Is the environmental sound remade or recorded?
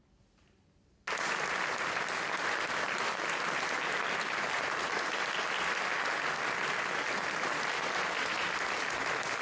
recorded